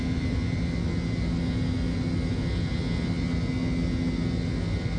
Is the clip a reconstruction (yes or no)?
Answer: no